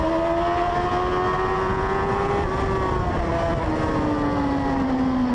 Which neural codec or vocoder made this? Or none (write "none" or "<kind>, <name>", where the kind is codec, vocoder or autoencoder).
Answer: none